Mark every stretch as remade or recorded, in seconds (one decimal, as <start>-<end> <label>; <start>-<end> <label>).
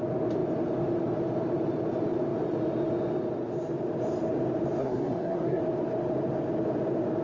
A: 0.0-4.8 recorded; 4.8-5.6 remade; 5.6-7.2 recorded